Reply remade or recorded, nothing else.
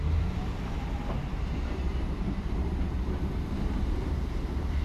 remade